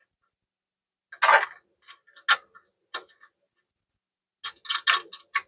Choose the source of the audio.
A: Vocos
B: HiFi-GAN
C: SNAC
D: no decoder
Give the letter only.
D